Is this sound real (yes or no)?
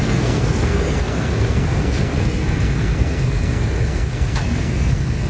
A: no